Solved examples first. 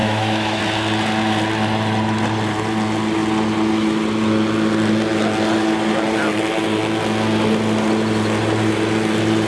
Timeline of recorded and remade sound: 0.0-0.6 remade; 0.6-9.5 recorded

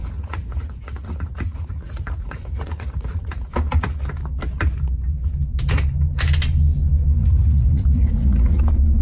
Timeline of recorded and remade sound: 0.0-3.5 remade; 3.5-7.2 recorded; 7.2-8.6 remade; 8.6-9.0 recorded

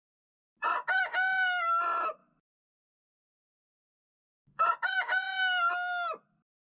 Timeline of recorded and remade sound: 0.0-6.6 recorded